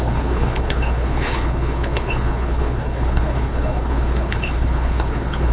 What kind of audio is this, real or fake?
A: fake